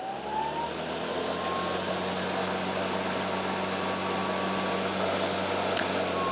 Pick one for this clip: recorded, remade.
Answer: recorded